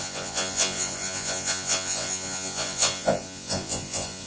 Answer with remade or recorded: remade